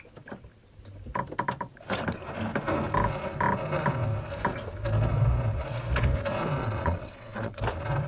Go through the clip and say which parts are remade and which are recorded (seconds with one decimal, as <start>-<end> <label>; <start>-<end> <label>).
0.0-6.6 recorded; 6.6-7.6 remade; 7.6-8.1 recorded